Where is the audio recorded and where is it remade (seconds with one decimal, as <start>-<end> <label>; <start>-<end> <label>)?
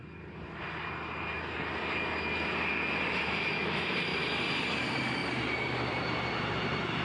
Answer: 0.0-3.1 recorded; 3.1-4.1 remade; 4.1-4.8 recorded; 4.8-7.0 remade